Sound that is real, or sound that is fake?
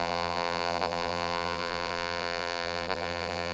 fake